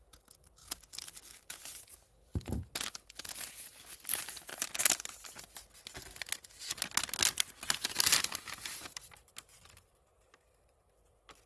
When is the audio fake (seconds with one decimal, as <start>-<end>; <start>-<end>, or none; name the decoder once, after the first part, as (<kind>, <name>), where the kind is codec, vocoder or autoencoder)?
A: none